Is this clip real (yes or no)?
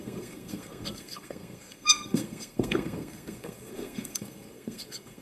no